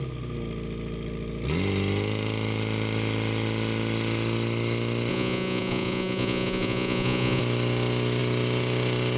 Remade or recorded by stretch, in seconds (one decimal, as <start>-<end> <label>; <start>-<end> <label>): 0.0-5.1 recorded; 5.1-7.4 remade; 7.4-9.2 recorded